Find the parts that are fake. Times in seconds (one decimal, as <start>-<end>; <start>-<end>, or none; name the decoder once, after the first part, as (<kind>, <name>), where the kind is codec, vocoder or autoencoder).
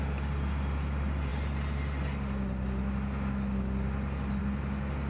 none